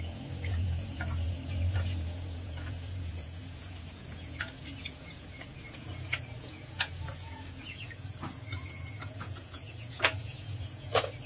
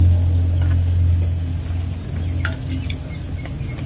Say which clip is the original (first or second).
second